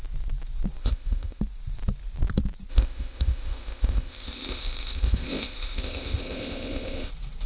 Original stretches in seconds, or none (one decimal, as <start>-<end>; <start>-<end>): 0.0-0.8; 1.4-2.7; 7.1-7.5